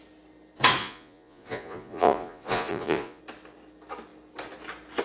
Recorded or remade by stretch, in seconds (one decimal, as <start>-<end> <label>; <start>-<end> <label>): 0.0-0.8 recorded; 0.8-3.2 remade; 3.2-5.0 recorded